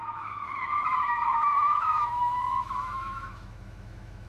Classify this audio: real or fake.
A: fake